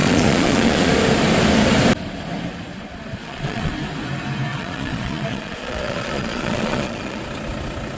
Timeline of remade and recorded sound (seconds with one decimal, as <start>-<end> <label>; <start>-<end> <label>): 0.0-0.9 remade; 0.9-3.2 recorded; 3.2-3.7 remade; 3.7-4.5 recorded; 4.5-7.2 remade; 7.2-8.0 recorded